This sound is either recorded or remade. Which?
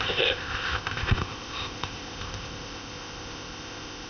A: remade